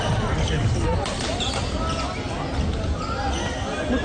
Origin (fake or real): real